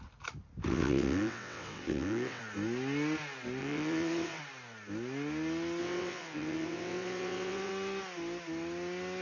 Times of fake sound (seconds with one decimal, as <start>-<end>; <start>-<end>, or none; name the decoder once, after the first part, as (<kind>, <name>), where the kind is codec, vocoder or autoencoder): 0.7-2.4 (vocoder, WaveNeXt); 3.6-4.4; 5.8-7.7